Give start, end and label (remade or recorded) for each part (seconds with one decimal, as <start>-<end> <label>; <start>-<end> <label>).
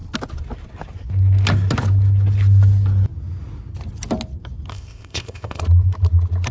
0.0-4.7 recorded; 4.7-5.6 remade; 5.6-6.5 recorded